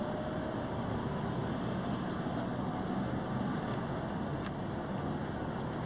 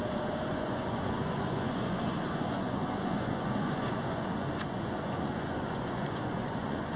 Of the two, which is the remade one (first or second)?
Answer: second